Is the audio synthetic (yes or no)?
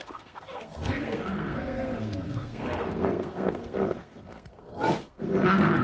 yes